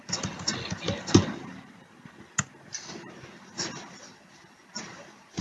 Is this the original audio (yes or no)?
yes